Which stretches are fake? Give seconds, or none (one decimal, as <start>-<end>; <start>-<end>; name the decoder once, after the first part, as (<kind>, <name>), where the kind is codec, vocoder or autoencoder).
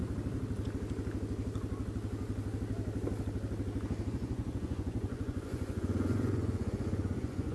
4.1-7.5 (vocoder, Vocos)